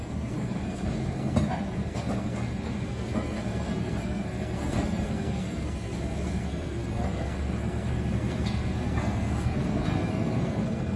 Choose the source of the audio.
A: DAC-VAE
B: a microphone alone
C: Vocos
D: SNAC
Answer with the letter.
D